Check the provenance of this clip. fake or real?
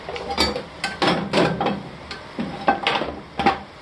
real